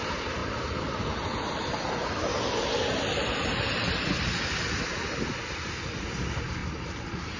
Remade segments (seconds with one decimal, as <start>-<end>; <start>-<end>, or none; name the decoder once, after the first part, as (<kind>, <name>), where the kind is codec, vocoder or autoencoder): 0.0-0.4 (vocoder, BigVGAN v2); 1.9-2.3; 5.5-7.4